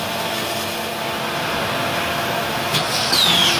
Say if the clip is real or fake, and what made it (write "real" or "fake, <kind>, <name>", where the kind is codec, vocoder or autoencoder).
real